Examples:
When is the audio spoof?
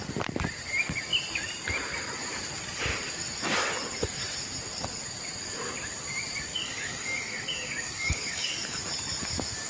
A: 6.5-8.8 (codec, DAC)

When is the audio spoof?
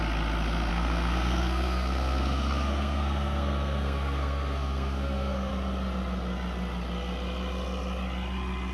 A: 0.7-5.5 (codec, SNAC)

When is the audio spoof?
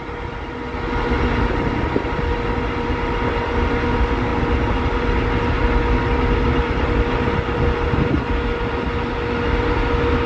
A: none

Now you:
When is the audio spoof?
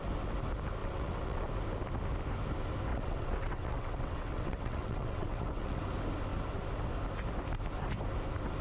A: 0.8-1.4 (vocoder, WaveNeXt); 2.9-5.8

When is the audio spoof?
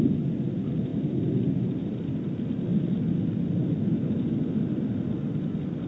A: none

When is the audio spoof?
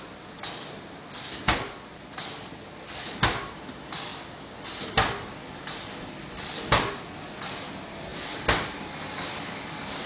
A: none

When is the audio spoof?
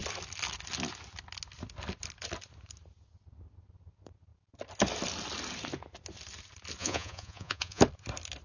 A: 6.8-7.8 (vocoder, Vocos)